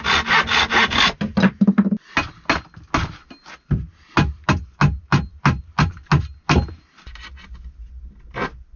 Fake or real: real